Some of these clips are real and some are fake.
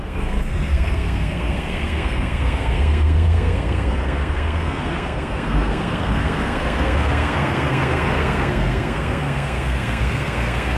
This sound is fake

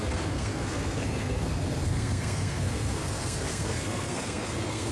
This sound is fake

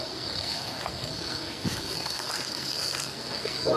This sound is fake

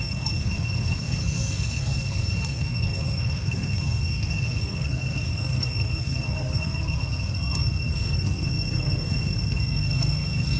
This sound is fake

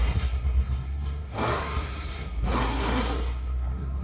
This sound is fake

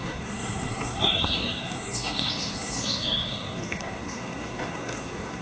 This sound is fake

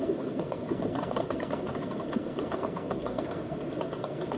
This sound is fake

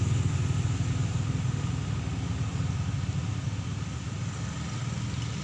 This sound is real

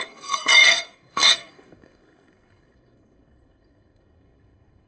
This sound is fake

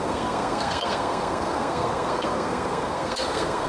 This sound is fake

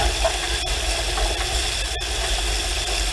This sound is real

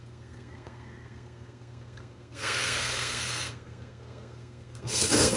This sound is fake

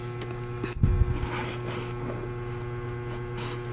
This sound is real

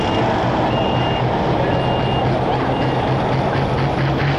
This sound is real